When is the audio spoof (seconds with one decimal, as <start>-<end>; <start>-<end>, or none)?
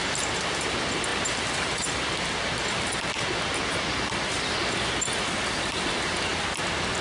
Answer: none